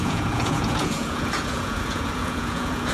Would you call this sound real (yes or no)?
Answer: no